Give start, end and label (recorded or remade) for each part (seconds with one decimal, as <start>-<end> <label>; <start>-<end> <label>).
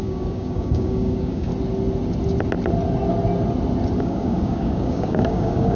0.0-1.5 remade; 1.5-4.0 recorded; 4.0-5.8 remade